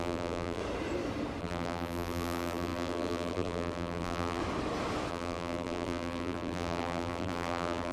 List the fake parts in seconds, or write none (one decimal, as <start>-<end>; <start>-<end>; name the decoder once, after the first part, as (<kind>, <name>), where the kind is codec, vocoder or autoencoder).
0.0-0.6 (vocoder, BigVGAN v2); 1.4-4.4; 5.1-7.9